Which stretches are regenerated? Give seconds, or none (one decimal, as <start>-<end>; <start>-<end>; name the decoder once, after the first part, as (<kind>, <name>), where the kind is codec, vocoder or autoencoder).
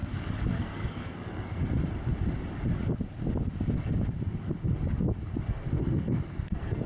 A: 0.5-1.6 (codec, SNAC); 5.5-6.9